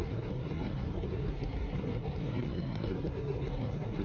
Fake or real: fake